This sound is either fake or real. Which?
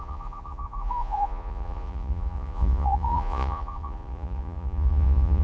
fake